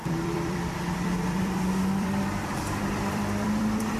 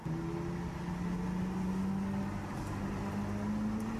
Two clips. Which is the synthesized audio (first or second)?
first